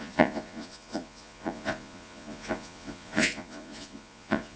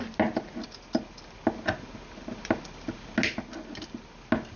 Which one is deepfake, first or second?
first